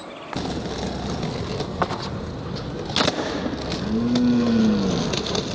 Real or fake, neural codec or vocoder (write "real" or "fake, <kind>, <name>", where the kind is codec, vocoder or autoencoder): real